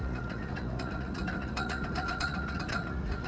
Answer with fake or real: fake